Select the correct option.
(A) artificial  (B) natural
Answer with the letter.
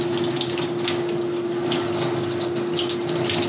B